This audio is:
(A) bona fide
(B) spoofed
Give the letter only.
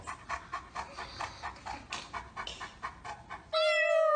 A